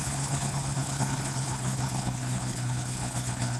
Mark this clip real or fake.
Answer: fake